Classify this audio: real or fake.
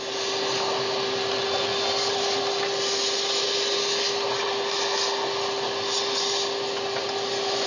real